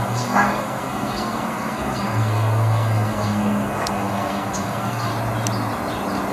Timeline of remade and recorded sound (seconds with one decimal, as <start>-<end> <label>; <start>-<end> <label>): 0.0-5.1 remade; 5.1-6.3 recorded